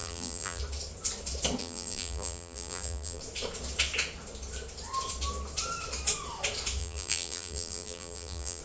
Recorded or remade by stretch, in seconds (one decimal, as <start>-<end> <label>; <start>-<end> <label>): 0.0-0.6 remade; 0.6-1.6 recorded; 1.6-3.2 remade; 3.2-6.8 recorded; 6.8-8.6 remade

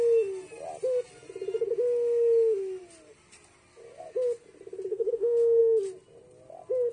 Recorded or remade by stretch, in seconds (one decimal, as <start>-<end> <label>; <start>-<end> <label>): 0.0-4.9 recorded; 4.9-5.6 remade; 5.6-6.9 recorded

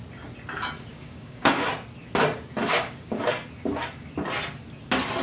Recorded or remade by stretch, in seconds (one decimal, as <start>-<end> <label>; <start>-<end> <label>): 0.0-0.9 recorded; 0.9-1.7 remade; 1.7-2.6 recorded; 2.6-3.3 remade; 3.3-5.2 recorded

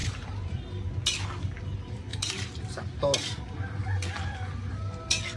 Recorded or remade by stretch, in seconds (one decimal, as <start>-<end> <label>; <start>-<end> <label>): 0.0-0.6 remade; 0.6-2.1 recorded; 2.1-2.8 remade; 2.8-5.4 recorded